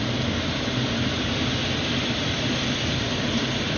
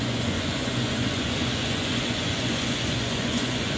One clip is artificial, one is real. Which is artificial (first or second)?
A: second